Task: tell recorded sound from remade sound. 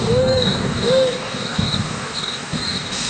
remade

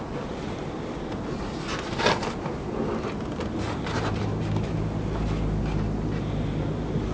recorded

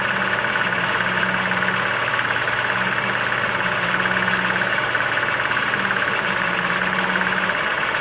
recorded